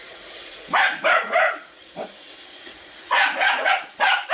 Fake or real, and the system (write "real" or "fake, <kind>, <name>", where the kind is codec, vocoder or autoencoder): fake, vocoder, Vocos